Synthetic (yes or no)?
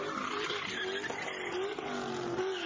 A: no